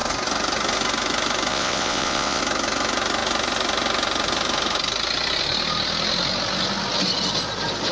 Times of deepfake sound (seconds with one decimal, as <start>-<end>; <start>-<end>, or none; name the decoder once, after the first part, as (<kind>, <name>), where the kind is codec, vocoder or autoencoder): 1.5-2.4 (vocoder, WaveNeXt)